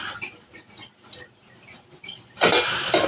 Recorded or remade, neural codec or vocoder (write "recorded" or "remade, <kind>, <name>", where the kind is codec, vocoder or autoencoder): recorded